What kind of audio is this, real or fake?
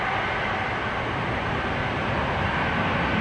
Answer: real